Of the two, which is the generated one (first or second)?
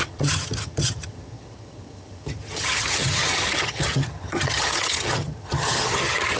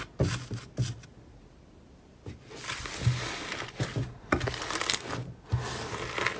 first